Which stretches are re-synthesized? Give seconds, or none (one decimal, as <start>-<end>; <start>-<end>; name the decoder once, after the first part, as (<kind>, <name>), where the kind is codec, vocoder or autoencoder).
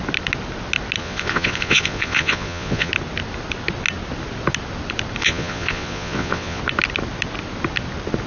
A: 1.0-2.9 (vocoder, Vocos); 5.2-6.6